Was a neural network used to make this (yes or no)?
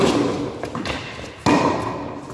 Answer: no